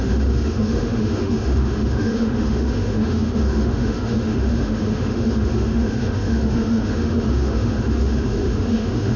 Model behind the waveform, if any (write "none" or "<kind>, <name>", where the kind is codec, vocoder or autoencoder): autoencoder, DAC-VAE